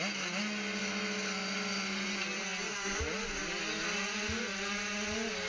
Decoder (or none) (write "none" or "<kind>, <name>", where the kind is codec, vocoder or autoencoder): none